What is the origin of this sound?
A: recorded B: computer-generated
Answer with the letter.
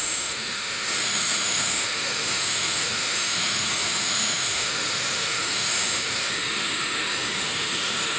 B